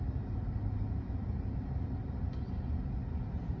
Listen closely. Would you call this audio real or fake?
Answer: real